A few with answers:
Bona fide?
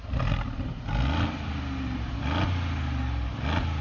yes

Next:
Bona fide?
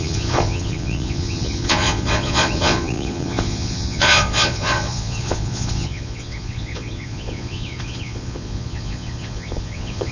no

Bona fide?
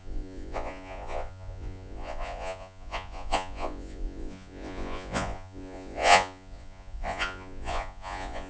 no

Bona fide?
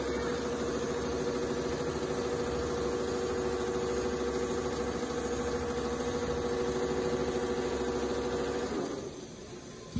yes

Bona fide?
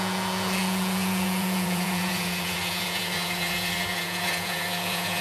no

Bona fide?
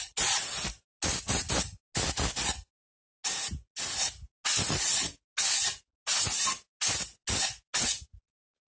yes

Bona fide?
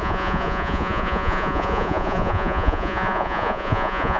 no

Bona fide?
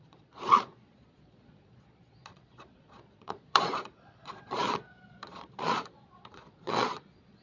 no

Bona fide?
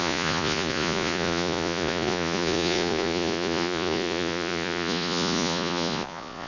no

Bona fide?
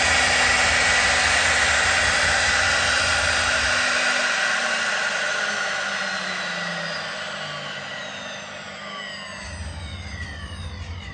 yes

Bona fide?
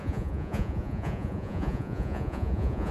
no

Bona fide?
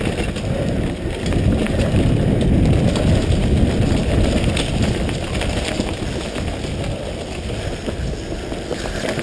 yes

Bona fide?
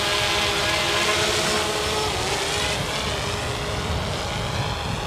yes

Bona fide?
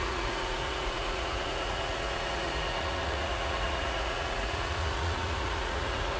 no